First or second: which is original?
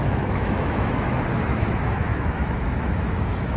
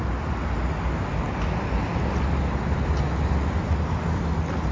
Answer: second